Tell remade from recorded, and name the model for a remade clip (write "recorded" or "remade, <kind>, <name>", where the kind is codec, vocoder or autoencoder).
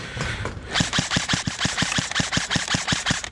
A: remade, vocoder, BigVGAN v2